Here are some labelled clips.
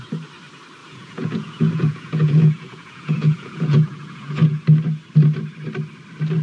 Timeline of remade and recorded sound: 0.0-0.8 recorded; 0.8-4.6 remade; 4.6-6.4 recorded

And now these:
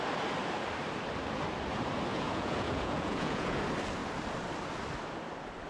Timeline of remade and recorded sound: 0.0-2.1 recorded; 2.1-3.6 remade; 3.6-5.7 recorded

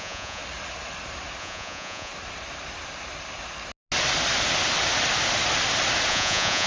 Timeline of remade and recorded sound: 0.0-0.4 remade; 0.4-1.4 recorded; 1.4-2.1 remade; 2.1-6.1 recorded; 6.1-6.7 remade

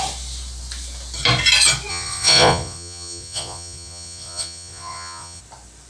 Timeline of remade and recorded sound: 0.0-1.9 recorded; 1.9-5.4 remade; 5.4-5.9 recorded